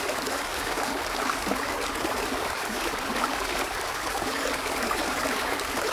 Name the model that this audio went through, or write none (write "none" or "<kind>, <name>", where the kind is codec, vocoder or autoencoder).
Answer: codec, DAC